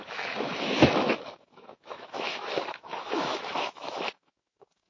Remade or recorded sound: remade